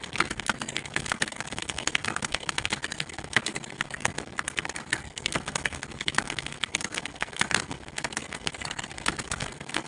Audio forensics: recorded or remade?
remade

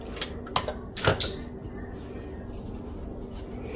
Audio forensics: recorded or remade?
recorded